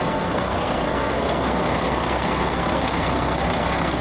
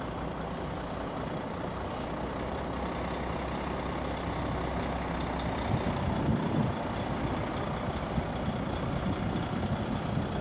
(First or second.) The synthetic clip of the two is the first